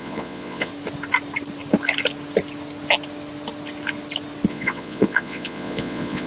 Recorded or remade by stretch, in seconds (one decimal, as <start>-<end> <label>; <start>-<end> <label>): 0.0-0.7 remade; 0.7-4.5 recorded; 4.5-6.3 remade